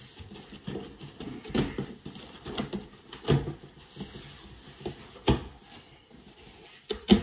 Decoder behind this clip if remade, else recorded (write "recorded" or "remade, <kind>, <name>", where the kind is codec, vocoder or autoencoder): recorded